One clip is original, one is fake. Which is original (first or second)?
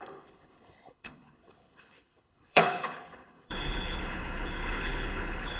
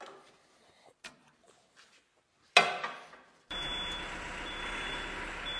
second